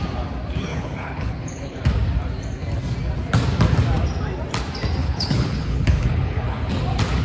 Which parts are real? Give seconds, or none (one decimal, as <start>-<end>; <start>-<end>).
0.0-0.7; 1.8-5.0; 6.7-7.2